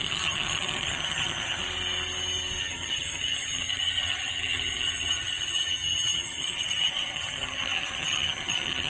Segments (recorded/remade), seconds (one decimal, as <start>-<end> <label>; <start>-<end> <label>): 0.0-1.6 remade; 1.6-2.6 recorded; 2.6-8.9 remade